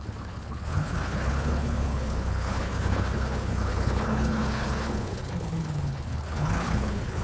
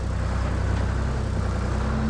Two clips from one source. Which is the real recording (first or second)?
second